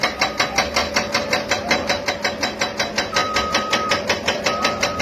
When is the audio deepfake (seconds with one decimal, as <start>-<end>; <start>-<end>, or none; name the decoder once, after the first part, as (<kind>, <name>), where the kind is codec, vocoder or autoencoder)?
0.8-2.1 (vocoder, BigVGAN v2); 3.2-5.0